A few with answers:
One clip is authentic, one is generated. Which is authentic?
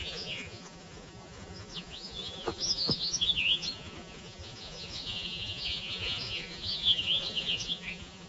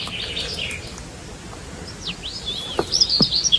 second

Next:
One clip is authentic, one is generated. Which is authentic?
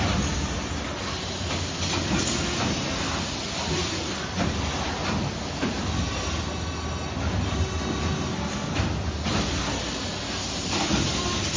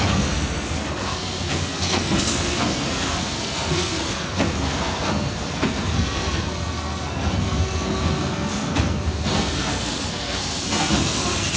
first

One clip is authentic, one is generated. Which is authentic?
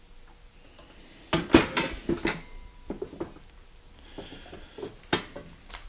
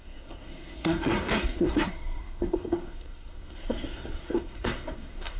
first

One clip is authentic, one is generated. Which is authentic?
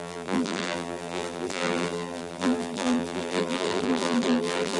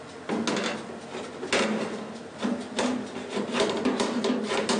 second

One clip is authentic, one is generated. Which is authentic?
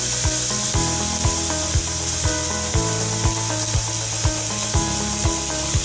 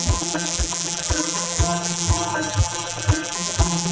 first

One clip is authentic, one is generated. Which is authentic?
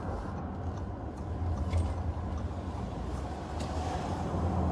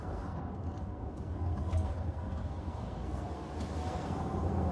first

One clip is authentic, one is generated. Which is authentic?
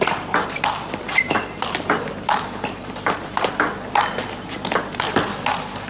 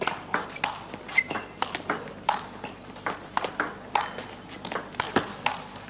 second